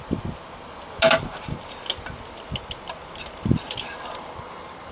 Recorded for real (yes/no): yes